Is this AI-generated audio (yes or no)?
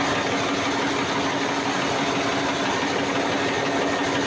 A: no